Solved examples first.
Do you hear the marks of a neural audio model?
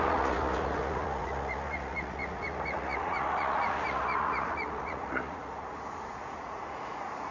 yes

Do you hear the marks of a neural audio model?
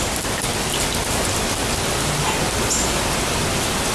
no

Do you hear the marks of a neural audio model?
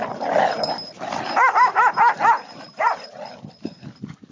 no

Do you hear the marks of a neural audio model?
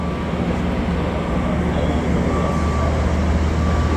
no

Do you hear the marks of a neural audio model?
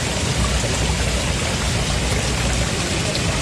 no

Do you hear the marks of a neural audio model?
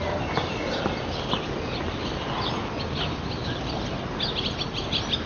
no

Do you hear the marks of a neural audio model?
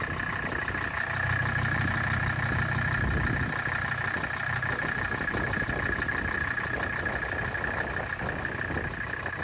no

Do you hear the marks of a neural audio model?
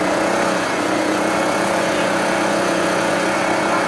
yes